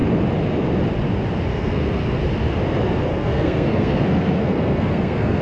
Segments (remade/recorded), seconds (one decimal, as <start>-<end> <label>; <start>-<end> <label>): 0.0-1.5 recorded; 1.5-2.2 remade; 2.2-3.1 recorded; 3.1-5.4 remade